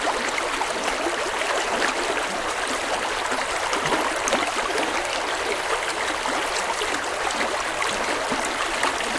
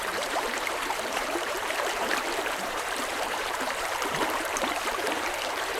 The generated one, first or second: second